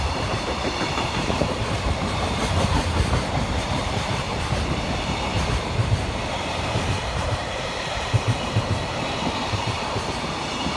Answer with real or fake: fake